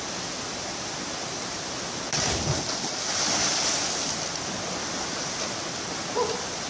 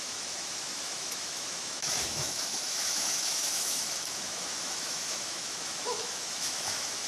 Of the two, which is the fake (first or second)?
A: second